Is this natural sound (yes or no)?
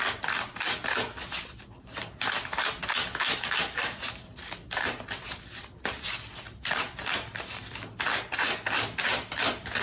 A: yes